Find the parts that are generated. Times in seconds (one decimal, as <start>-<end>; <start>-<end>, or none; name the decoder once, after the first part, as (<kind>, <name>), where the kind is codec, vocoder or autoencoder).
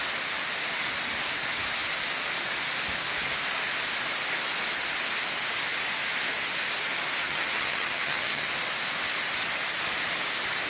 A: 7.2-8.5 (vocoder, HiFi-GAN)